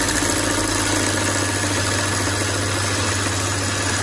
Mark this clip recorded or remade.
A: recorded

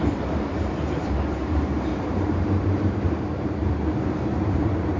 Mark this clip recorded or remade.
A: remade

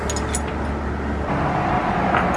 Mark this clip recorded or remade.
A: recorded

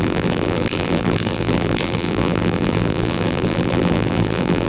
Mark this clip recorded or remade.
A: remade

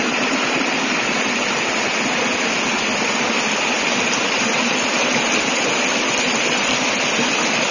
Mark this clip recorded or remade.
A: recorded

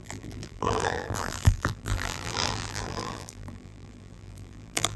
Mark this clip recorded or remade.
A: remade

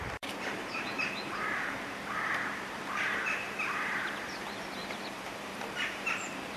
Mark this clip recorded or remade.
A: remade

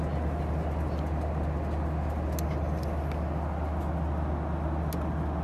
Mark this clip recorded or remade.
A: recorded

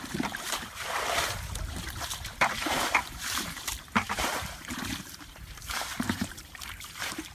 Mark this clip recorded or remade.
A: remade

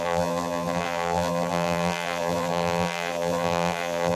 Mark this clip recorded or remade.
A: remade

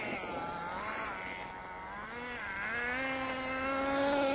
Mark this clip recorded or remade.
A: recorded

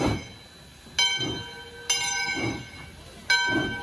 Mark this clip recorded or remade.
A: recorded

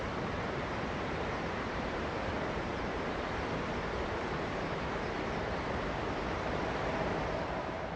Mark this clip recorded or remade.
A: remade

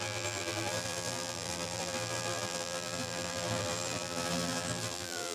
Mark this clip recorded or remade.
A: remade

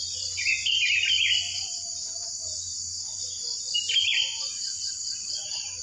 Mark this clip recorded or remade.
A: recorded